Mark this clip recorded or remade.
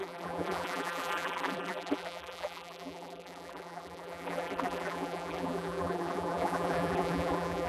remade